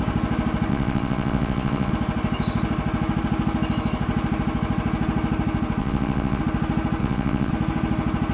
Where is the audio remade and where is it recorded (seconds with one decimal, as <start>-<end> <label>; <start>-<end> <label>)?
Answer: 0.0-0.7 recorded; 0.7-1.9 remade; 1.9-5.8 recorded; 5.8-6.4 remade; 6.4-7.0 recorded; 7.0-7.5 remade; 7.5-8.3 recorded